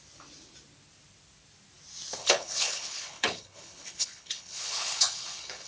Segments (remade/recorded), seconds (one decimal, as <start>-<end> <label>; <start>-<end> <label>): 0.0-2.2 recorded; 2.2-5.7 remade